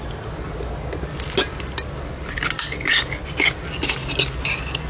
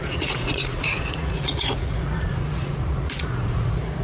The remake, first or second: second